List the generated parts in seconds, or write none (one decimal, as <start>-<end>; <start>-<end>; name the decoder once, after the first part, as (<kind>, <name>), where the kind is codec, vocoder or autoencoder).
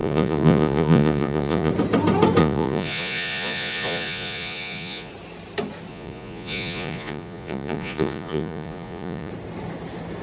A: 0.0-1.7 (vocoder, Vocos); 2.4-5.1; 5.9-9.3